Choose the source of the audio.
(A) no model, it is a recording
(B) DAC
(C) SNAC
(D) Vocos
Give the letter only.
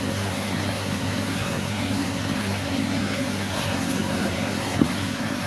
C